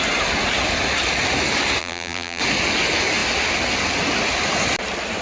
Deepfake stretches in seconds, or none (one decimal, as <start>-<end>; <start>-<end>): 1.8-2.4